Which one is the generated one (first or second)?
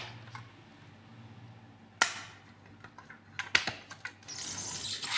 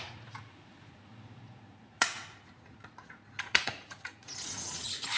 second